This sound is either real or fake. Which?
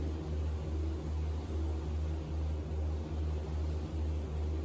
real